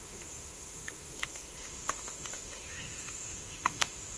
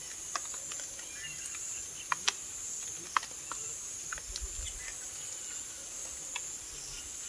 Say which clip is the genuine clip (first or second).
second